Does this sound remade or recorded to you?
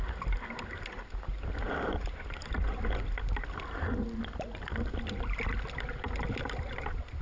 recorded